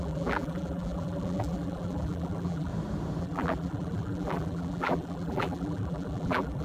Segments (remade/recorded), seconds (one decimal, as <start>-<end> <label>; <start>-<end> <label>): 0.0-2.7 remade; 2.7-3.2 recorded; 3.2-6.6 remade